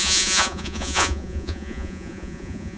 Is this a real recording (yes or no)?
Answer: no